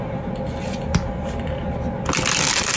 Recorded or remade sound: recorded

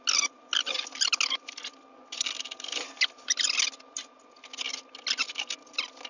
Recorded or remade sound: recorded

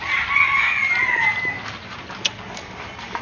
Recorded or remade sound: recorded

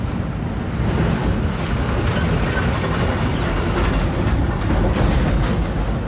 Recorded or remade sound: recorded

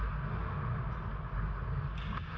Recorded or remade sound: recorded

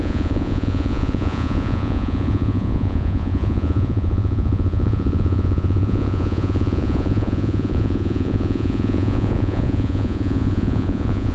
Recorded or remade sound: remade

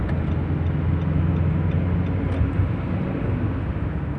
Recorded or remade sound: recorded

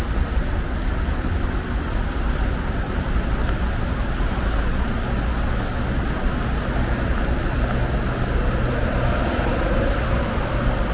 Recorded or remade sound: recorded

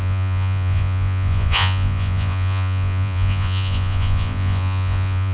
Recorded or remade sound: remade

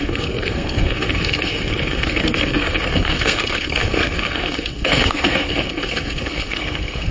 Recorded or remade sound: remade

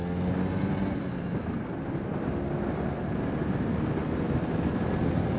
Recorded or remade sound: recorded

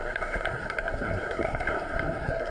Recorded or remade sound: remade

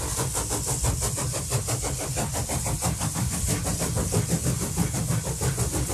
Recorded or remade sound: recorded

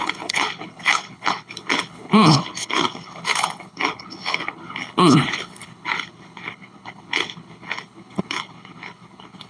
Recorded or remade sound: remade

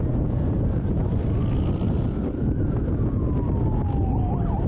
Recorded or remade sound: recorded